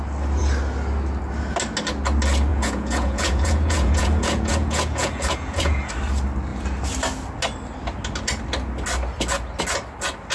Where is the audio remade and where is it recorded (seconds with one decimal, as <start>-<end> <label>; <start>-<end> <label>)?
0.0-2.5 recorded; 2.5-5.9 remade; 5.9-10.3 recorded